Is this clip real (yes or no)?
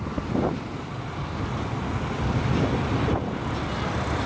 yes